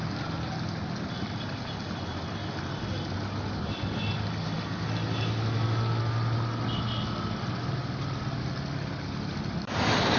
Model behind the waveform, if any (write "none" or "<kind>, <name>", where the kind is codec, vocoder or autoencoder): none